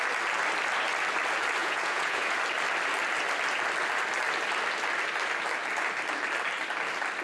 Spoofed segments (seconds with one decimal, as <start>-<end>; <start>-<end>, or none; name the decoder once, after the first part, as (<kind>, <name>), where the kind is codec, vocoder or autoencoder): 1.6-2.4 (vocoder, Vocos)